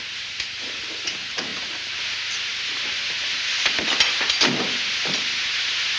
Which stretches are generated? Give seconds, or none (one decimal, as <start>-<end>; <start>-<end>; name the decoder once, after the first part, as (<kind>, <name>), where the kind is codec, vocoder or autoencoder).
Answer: 1.5-2.0 (vocoder, BigVGAN v2)